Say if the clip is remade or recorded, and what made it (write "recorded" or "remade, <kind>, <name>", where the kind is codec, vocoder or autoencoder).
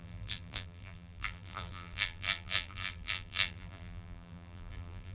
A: remade, vocoder, BigVGAN v2